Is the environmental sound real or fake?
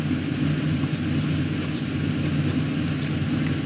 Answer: real